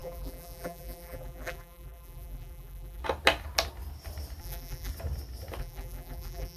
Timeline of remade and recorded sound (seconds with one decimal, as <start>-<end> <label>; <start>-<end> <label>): 0.0-3.0 remade; 3.0-4.4 recorded; 4.4-4.9 remade; 4.9-5.6 recorded; 5.6-6.6 remade